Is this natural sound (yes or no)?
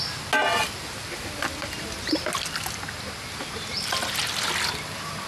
yes